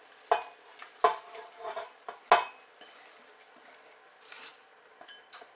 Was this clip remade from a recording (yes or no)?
no